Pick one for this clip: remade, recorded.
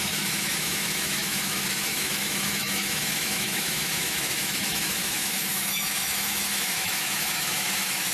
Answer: remade